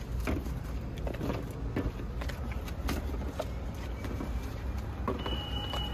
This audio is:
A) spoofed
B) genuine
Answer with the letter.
B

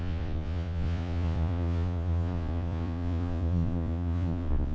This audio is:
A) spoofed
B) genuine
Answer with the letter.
A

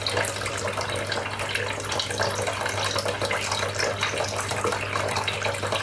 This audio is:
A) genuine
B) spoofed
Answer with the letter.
A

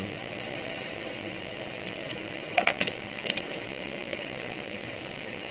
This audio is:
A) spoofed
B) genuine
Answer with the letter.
A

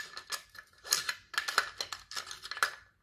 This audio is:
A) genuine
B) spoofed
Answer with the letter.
A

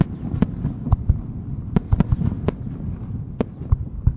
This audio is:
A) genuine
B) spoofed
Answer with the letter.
A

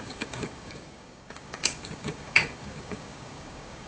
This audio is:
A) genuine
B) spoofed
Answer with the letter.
B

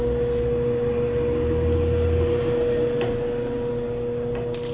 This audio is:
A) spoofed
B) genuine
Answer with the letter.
B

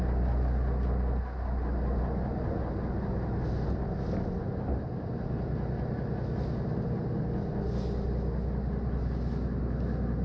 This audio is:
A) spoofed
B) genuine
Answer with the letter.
B